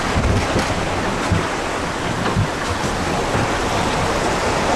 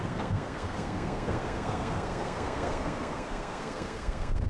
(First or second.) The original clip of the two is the first